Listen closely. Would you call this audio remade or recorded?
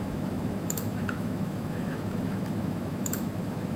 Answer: remade